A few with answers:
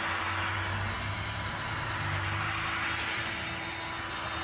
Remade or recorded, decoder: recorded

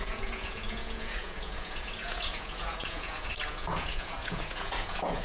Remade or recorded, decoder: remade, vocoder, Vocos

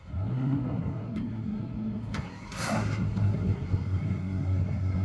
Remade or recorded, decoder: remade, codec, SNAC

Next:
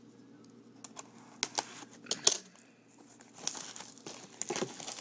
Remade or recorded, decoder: recorded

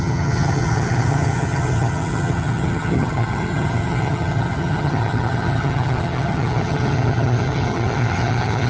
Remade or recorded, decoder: remade, vocoder, HiFi-GAN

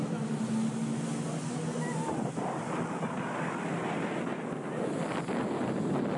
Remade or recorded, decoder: recorded